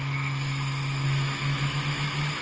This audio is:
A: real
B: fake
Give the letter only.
B